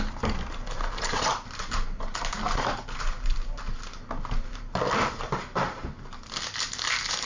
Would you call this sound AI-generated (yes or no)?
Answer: no